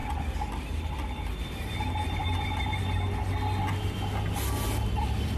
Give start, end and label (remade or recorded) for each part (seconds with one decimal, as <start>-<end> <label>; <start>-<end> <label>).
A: 0.0-5.4 recorded